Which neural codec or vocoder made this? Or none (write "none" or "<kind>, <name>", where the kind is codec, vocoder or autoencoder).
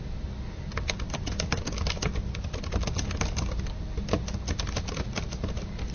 none